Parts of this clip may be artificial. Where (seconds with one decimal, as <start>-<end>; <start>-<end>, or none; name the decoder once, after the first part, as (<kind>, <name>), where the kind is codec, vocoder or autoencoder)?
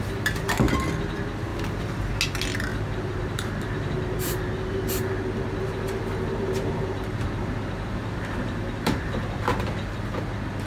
1.5-2.1 (vocoder, BigVGAN v2); 2.7-5.1; 6.3-9.7